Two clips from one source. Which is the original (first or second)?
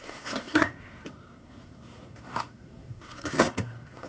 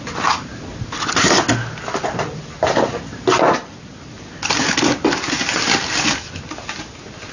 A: second